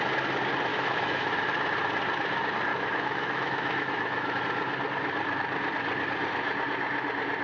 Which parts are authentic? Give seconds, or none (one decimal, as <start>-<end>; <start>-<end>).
0.0-0.7; 1.4-2.7; 4.4-7.4